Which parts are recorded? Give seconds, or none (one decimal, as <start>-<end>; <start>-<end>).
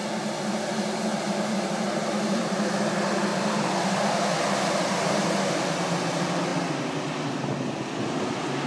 0.0-1.1; 2.7-3.3; 5.5-8.7